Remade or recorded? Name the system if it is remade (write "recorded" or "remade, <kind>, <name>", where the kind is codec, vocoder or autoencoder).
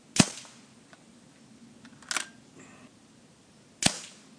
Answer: recorded